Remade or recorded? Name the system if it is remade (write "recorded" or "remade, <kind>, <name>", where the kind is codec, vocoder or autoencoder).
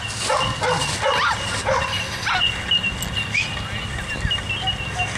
recorded